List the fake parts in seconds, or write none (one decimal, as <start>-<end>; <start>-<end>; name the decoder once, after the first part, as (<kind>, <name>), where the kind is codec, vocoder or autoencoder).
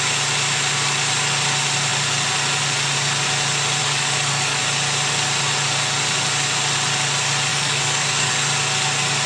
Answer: 3.8-4.6 (codec, DAC); 7.5-8.3